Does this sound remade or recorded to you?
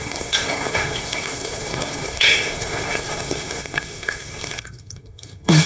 remade